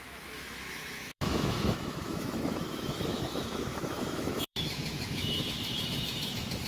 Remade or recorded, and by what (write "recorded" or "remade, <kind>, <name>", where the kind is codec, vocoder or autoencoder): remade, autoencoder, DAC-VAE